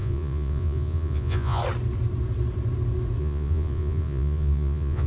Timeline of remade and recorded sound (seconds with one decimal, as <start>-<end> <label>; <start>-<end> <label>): 0.0-1.6 remade; 1.6-3.2 recorded; 3.2-5.1 remade